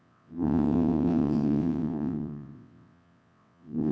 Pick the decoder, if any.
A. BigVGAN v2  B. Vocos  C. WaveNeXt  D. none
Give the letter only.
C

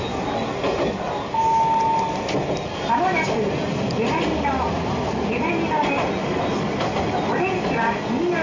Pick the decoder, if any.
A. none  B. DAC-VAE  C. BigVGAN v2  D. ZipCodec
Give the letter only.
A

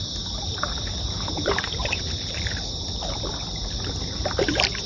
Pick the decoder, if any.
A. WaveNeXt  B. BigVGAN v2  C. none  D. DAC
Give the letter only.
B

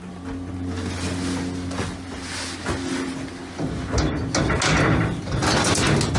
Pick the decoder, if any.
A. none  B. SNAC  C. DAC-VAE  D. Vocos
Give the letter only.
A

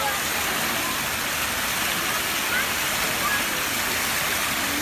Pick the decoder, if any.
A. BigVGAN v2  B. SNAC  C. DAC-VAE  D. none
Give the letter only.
D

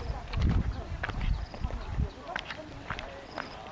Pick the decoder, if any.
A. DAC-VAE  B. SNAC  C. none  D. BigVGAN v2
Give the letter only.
D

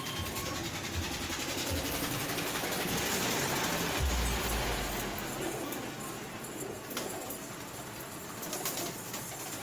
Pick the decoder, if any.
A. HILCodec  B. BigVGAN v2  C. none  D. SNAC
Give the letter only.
C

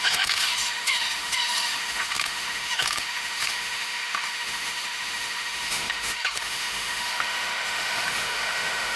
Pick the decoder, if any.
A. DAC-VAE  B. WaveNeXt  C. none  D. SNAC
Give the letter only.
A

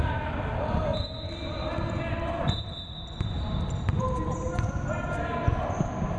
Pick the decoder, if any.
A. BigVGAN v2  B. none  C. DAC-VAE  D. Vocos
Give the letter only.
B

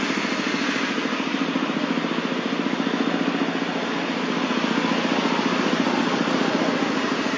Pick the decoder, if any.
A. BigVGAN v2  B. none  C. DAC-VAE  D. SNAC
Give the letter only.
B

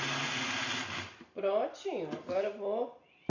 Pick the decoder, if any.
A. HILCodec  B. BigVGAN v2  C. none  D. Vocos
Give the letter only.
C